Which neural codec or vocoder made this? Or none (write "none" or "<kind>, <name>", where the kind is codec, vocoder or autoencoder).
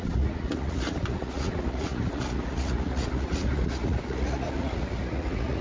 vocoder, Vocos